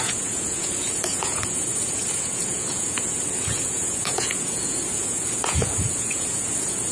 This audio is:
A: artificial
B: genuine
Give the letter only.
A